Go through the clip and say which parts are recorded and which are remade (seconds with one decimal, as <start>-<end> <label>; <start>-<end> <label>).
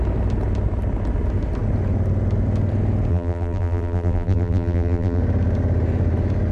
0.0-3.1 recorded; 3.1-5.2 remade; 5.2-6.5 recorded